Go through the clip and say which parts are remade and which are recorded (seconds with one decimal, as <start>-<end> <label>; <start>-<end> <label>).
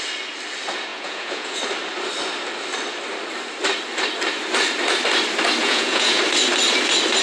0.0-0.9 recorded; 0.9-1.6 remade; 1.6-5.6 recorded; 5.6-6.2 remade; 6.2-7.2 recorded